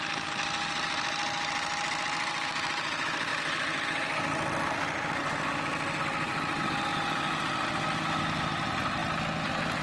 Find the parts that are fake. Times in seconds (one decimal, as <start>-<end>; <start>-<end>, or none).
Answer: none